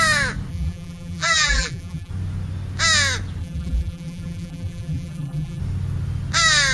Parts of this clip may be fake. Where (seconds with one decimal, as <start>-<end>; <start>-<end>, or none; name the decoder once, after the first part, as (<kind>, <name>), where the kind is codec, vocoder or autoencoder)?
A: 0.5-2.1 (vocoder, BigVGAN v2); 3.4-5.6